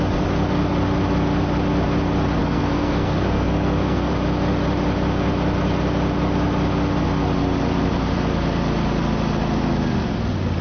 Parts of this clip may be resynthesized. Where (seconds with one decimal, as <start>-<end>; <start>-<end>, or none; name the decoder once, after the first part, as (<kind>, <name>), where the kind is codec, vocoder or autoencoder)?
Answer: 2.4-4.1 (codec, SNAC)